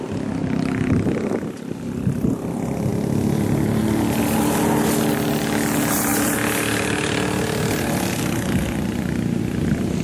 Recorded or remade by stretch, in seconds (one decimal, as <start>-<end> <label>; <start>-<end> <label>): 0.0-10.0 recorded